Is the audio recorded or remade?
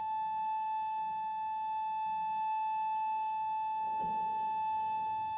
remade